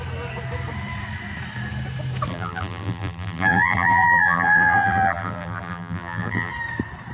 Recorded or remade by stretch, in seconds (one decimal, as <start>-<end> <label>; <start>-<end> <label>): 0.0-2.3 recorded; 2.3-6.5 remade; 6.5-7.1 recorded